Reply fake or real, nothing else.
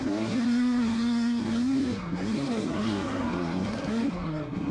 fake